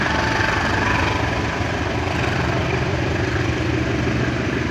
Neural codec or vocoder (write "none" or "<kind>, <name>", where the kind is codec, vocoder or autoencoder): none